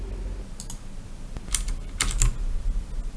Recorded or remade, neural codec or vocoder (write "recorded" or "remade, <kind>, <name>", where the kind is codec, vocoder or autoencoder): recorded